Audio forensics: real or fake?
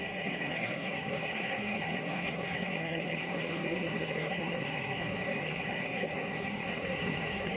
fake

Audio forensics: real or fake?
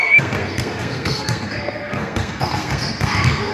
fake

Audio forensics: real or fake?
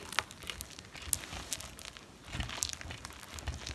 real